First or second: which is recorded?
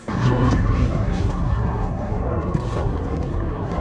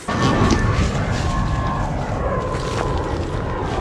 second